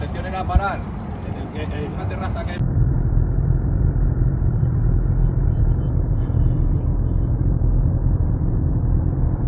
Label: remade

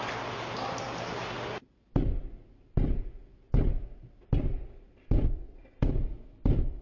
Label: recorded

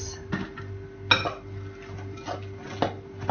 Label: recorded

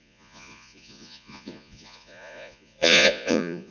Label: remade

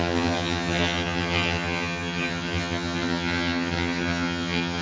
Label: remade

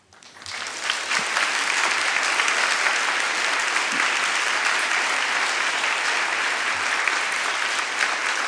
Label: recorded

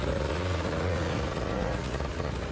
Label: remade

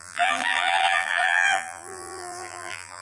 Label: remade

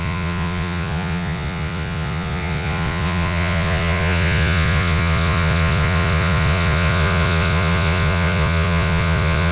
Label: remade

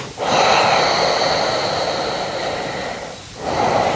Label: recorded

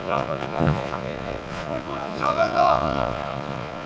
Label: remade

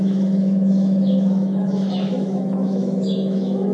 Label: remade